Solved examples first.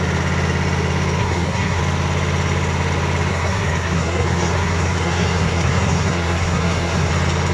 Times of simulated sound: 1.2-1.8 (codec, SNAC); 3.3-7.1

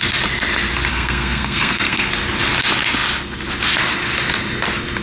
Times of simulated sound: 0.9-2.1 (codec, SNAC)

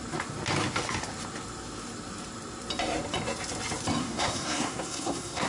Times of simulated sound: 4.0-5.5 (codec, SNAC)

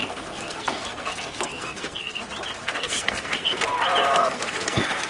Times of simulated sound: 0.0-2.2 (codec, SNAC); 2.6-3.6; 4.0-5.1

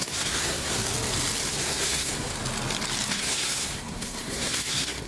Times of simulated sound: 0.0-0.8 (codec, SNAC); 1.5-2.3; 3.1-5.1

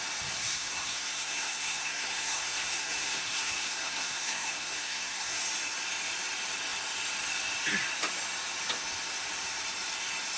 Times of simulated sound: 0.4-5.4 (codec, SNAC)

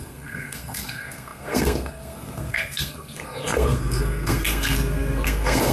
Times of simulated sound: 0.0-5.7 (codec, SNAC)